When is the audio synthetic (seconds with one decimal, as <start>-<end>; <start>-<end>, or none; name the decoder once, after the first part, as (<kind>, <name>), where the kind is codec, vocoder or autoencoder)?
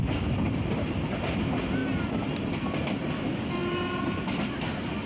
none